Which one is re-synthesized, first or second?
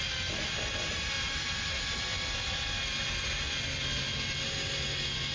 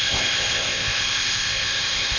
second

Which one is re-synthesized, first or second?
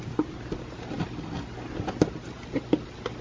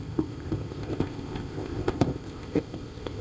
second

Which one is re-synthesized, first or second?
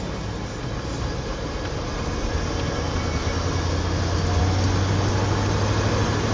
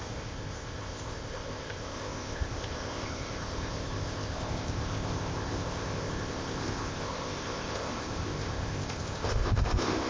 second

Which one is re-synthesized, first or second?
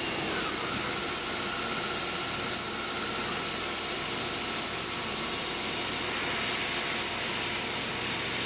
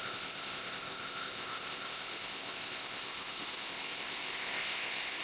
second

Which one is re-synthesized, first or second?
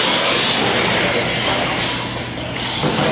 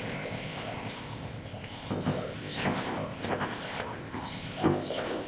second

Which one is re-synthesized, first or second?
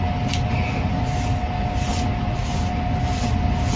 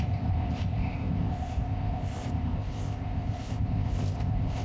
second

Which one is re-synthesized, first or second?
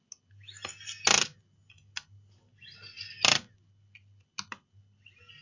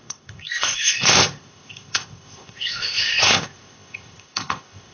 second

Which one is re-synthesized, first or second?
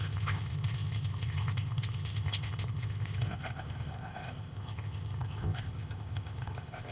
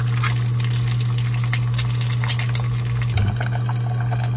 first